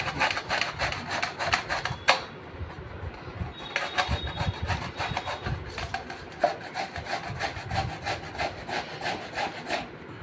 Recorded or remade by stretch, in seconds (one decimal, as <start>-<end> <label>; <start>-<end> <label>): 0.0-10.2 recorded